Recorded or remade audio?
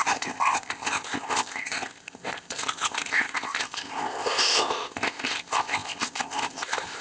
remade